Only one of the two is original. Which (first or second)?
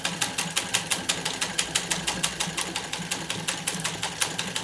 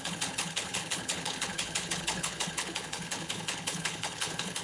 first